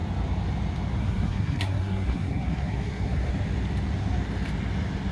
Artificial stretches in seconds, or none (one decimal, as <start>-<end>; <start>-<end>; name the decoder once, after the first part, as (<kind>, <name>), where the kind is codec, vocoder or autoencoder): 1.0-3.3 (codec, SNAC)

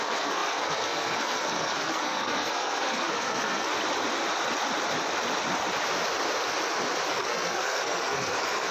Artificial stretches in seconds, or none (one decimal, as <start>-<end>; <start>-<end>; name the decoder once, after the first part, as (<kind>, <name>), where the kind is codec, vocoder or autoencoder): 0.0-3.7 (codec, SNAC); 7.1-8.7